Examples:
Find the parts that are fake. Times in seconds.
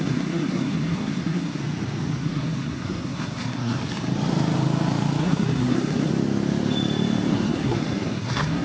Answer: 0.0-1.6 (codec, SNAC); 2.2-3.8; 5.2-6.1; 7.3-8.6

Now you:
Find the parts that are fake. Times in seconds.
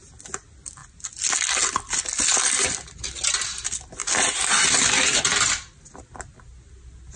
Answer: none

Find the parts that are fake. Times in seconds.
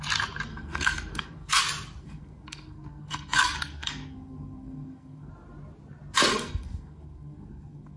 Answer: 0.5-1.6 (codec, SNAC); 2.0-5.3; 6.3-8.0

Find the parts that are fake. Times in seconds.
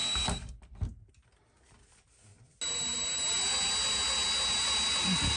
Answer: none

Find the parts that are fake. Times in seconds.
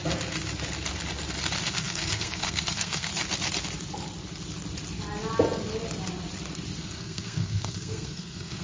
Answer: 1.7-3.1 (codec, SNAC); 6.8-8.6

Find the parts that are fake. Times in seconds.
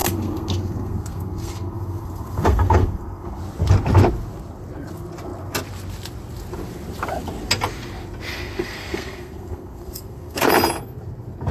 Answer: 0.0-3.4 (codec, SNAC); 8.3-10.5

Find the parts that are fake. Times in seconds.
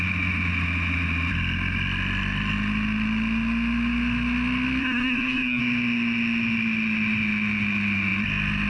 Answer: 4.8-5.6 (codec, SNAC)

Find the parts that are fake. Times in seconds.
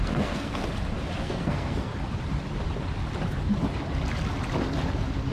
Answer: 0.0-0.6 (codec, SNAC); 1.2-1.9